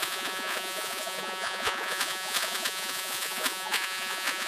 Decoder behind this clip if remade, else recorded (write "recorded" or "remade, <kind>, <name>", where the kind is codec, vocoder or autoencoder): remade, vocoder, Vocos